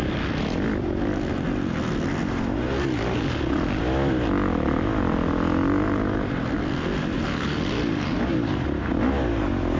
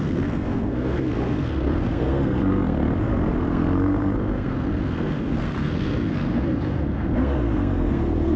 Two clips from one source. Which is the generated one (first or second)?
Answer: second